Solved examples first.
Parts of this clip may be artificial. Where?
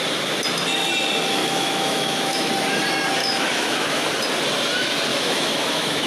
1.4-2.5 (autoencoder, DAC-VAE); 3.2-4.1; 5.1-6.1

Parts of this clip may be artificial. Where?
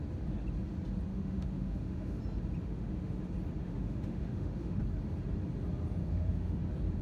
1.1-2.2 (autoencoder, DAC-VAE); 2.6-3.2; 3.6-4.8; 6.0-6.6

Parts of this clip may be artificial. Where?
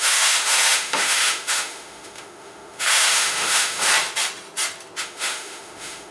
0.0-3.9 (autoencoder, DAC-VAE); 5.0-6.1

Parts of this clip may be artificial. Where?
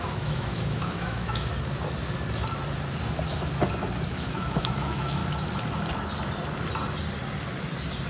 0.0-1.5 (autoencoder, DAC-VAE); 4.1-5.2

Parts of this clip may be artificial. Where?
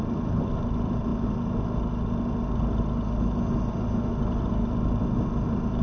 none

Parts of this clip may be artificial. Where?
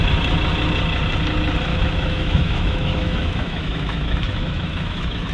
1.7-5.3 (autoencoder, DAC-VAE)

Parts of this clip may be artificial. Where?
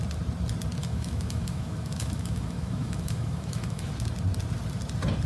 0.8-3.9 (autoencoder, DAC-VAE)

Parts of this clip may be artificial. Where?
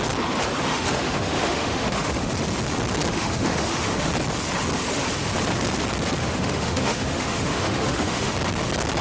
0.7-2.3 (autoencoder, DAC-VAE); 3.1-4.1; 6.2-8.3